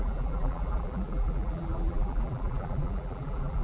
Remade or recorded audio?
remade